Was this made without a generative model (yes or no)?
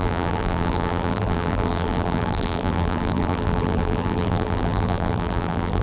no